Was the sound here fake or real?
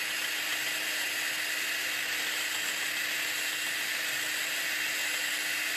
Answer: real